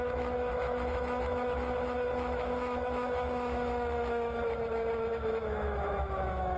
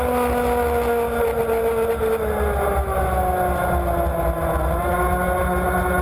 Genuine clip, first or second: second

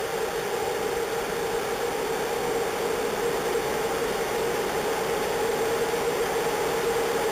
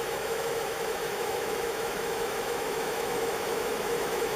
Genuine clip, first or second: first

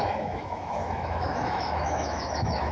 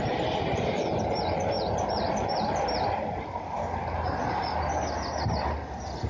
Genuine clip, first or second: second